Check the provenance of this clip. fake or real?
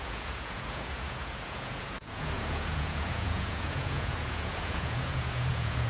fake